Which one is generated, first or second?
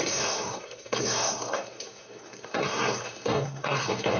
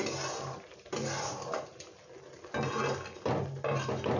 first